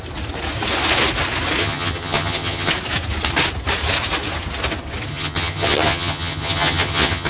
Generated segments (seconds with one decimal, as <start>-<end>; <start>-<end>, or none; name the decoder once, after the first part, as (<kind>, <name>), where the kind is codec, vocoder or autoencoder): 1.6-2.7 (vocoder, HiFi-GAN); 5.1-7.3